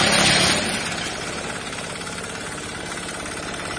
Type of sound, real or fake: real